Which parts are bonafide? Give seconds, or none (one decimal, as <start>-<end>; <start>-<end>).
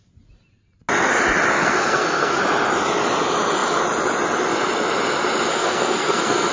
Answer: 0.0-1.5; 2.4-5.5